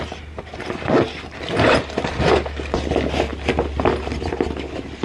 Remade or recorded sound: recorded